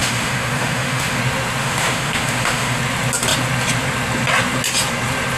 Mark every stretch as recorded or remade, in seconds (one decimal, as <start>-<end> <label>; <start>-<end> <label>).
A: 0.0-1.2 remade; 1.2-1.6 recorded; 1.6-2.8 remade; 2.8-5.4 recorded